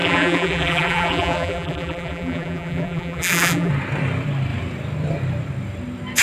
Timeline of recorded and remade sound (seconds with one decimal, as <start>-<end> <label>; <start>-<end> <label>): 0.0-3.7 remade; 3.7-6.2 recorded